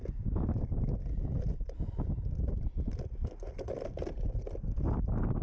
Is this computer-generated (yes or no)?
no